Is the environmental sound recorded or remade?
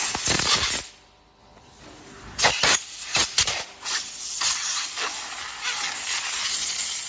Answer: recorded